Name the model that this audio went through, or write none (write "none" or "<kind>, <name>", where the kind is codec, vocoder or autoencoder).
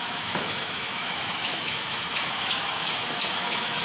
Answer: autoencoder, DAC-VAE